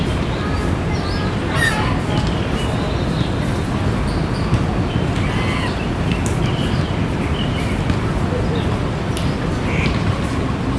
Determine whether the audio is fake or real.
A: real